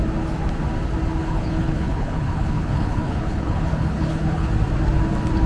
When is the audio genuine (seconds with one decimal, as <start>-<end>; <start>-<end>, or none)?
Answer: 0.0-1.2; 4.5-5.5